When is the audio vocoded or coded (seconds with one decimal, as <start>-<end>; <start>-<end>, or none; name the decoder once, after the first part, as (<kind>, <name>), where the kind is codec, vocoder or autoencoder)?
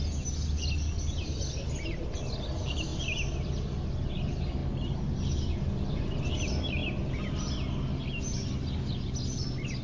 none